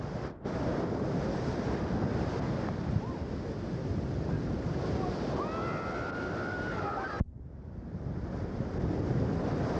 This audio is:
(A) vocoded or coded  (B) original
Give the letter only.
B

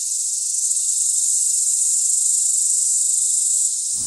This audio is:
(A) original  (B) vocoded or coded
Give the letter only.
B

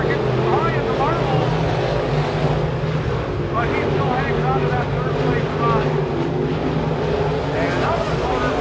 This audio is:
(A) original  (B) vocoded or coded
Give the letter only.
A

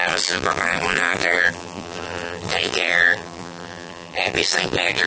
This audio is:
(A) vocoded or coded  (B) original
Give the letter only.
A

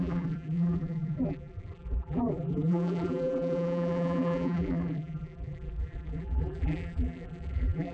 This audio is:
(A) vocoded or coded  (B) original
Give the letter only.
A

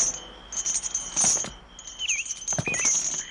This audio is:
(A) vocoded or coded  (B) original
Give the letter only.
B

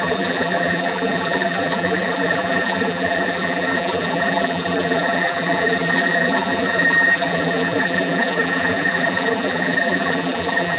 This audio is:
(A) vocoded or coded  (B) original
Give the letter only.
A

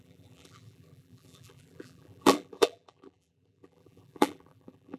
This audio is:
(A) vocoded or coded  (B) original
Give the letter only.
A